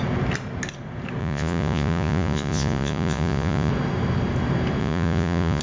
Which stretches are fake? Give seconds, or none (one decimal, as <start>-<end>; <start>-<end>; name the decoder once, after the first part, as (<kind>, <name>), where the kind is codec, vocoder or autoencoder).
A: 1.2-3.7 (vocoder, Vocos); 4.8-5.6